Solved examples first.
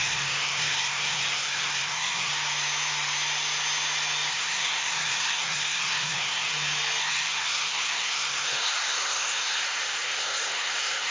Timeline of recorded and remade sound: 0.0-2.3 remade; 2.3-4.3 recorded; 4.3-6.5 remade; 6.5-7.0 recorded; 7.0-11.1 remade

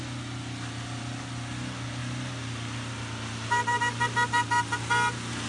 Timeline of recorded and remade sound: 0.0-5.5 recorded